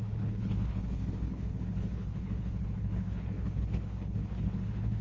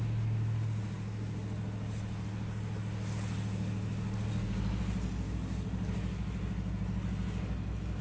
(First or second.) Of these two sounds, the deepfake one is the first